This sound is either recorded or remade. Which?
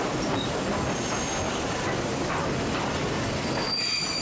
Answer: recorded